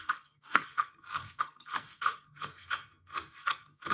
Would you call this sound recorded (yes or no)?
no